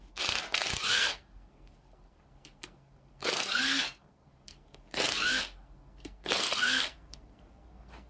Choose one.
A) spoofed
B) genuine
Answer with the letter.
A